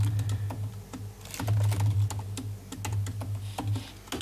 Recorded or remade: recorded